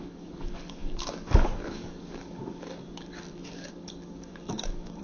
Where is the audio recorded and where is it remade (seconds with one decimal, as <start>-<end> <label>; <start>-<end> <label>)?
0.0-5.0 remade